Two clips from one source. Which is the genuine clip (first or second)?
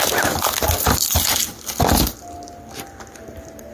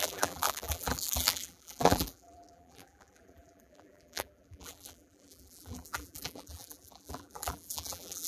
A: first